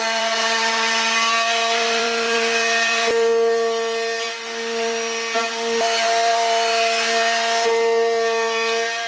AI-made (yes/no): yes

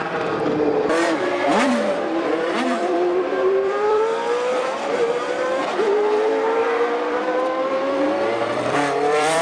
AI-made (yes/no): yes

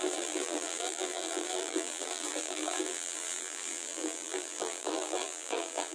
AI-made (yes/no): yes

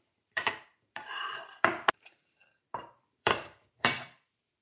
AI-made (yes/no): yes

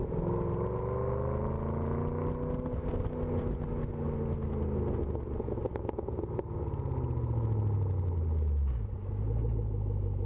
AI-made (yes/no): no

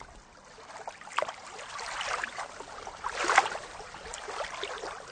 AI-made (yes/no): no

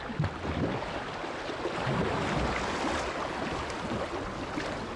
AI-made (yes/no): no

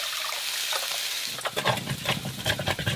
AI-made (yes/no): no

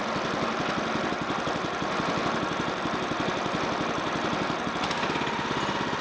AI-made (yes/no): no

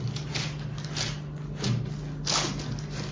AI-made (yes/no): no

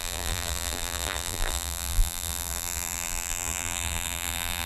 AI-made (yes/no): yes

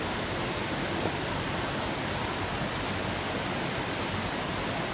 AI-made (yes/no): no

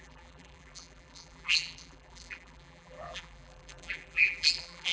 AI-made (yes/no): yes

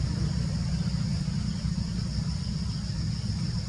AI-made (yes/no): no